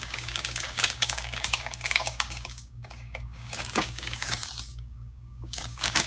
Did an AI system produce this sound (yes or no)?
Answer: yes